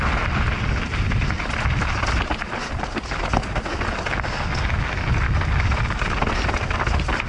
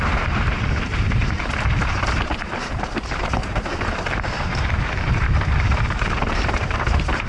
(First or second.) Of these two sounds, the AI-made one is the second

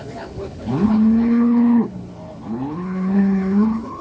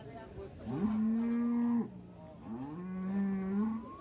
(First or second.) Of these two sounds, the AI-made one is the first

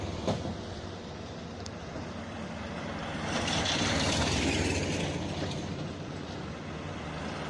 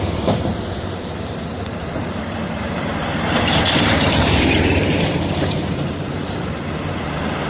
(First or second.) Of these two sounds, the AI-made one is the second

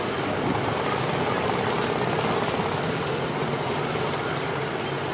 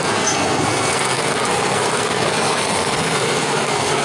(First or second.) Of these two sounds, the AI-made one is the second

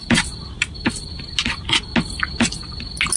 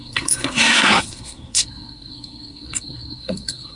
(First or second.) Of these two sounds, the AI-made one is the second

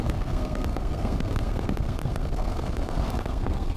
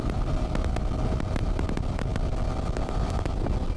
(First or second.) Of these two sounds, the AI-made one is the first